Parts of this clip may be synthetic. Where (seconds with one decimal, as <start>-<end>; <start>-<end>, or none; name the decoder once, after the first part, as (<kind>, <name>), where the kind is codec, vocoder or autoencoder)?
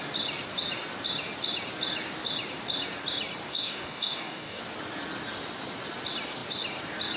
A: 3.5-4.6 (codec, DAC)